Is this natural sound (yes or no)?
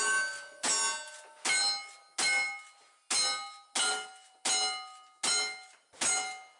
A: yes